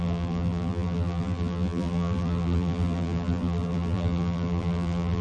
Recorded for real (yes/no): no